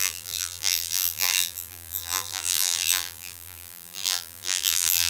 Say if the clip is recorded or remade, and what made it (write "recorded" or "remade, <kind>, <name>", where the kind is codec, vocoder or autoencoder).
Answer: remade, vocoder, BigVGAN v2